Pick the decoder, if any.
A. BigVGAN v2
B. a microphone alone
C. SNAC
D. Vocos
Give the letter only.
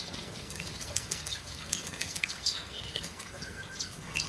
C